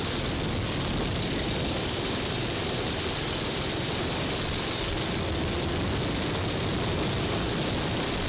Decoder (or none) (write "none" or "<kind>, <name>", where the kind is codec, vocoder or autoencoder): none